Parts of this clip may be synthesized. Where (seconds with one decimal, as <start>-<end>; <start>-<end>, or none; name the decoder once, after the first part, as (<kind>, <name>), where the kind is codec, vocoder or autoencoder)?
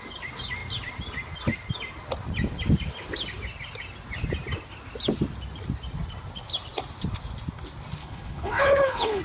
8.0-9.2 (codec, HILCodec)